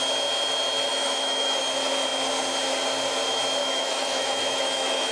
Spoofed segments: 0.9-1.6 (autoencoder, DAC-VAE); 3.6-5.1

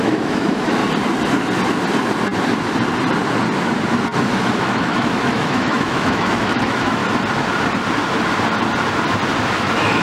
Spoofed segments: 0.0-0.8 (autoencoder, DAC-VAE); 4.6-7.0; 9.6-10.0

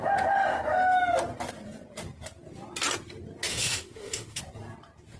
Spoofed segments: 3.5-4.4 (autoencoder, DAC-VAE)

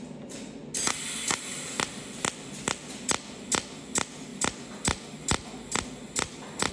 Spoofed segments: none